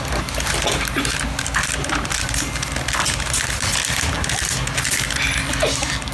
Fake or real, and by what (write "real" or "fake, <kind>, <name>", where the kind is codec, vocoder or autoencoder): real